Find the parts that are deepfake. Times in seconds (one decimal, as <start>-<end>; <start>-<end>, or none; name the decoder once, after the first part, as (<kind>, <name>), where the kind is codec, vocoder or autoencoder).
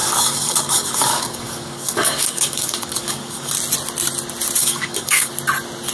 0.0-3.5 (codec, DAC); 4.6-5.3